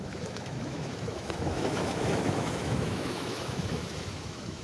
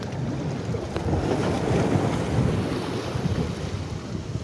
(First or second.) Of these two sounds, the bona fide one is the second